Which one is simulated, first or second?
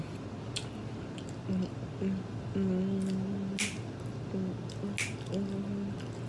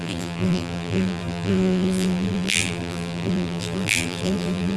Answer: second